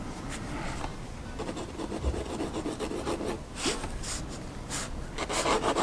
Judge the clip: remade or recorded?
recorded